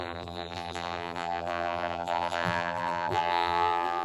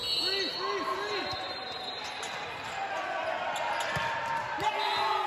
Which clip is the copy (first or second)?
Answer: first